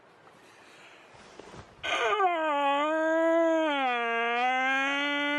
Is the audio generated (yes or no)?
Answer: no